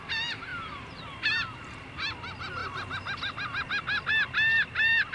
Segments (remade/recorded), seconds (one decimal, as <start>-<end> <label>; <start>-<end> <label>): 0.0-2.6 remade; 2.6-4.1 recorded; 4.1-5.1 remade